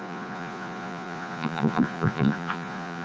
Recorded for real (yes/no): no